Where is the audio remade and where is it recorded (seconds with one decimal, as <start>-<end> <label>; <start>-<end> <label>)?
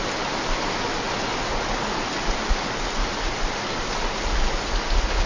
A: 0.0-5.3 recorded